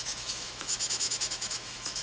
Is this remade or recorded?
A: remade